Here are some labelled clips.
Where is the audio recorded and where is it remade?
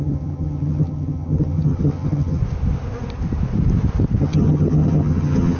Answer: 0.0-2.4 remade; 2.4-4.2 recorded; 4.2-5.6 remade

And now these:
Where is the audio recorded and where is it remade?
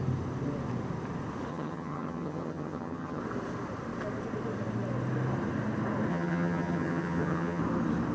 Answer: 0.0-1.5 recorded; 1.5-3.2 remade; 3.2-6.1 recorded; 6.1-7.6 remade; 7.6-8.1 recorded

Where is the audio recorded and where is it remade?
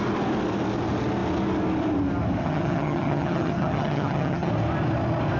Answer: 0.0-2.4 recorded; 2.4-4.5 remade; 4.5-5.4 recorded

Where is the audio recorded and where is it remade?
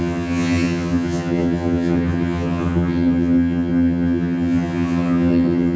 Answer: 0.0-5.8 remade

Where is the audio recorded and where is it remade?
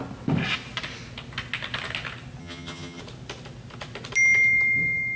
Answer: 0.0-2.4 recorded; 2.4-3.0 remade; 3.0-5.2 recorded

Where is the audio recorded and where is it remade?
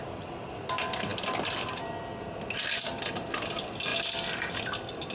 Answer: 0.0-5.1 recorded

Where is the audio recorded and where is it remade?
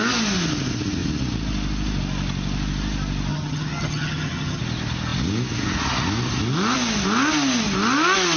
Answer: 0.0-3.3 recorded; 3.3-4.6 remade; 4.6-8.4 recorded